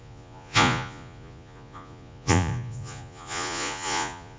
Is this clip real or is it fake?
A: fake